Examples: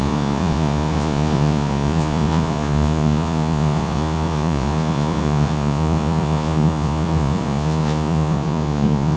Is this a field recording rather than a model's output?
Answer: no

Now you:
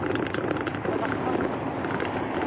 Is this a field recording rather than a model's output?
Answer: yes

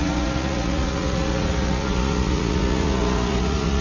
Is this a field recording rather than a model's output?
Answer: no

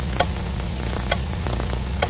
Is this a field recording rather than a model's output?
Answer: no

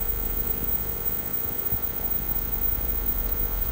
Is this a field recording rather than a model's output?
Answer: no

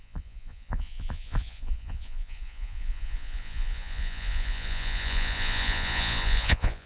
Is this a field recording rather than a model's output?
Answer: no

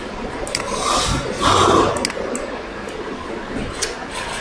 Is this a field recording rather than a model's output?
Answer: yes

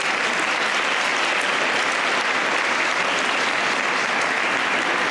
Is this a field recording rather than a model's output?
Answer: yes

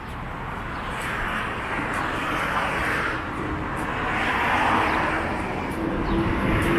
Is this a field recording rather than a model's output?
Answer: yes